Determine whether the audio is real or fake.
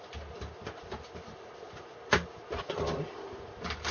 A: real